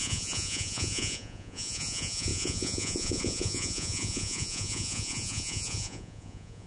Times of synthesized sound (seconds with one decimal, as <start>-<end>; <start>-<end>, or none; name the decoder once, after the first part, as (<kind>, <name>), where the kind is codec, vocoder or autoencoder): 0.0-6.7 (vocoder, Vocos)